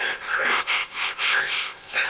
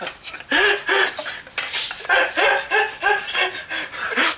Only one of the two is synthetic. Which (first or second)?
first